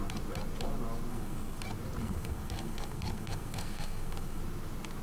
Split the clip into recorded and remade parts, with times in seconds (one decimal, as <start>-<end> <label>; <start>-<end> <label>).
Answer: 0.0-1.1 recorded; 1.1-1.6 remade; 1.6-2.0 recorded; 2.0-4.4 remade; 4.4-5.0 recorded